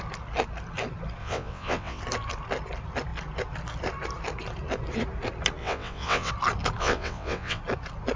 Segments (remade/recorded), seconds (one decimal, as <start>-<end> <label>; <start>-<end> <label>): 0.0-1.2 recorded; 1.2-2.0 remade; 2.0-5.6 recorded; 5.6-6.3 remade; 6.3-6.8 recorded; 6.8-7.6 remade; 7.6-8.2 recorded